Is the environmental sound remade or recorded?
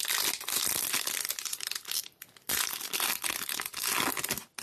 recorded